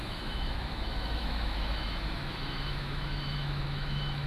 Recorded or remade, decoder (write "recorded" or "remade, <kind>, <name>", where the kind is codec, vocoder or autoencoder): remade, autoencoder, DAC-VAE